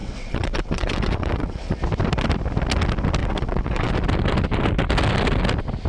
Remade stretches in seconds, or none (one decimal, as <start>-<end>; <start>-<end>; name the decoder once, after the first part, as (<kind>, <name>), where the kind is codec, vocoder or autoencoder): 0.0-1.8 (vocoder, WaveNeXt); 3.2-3.9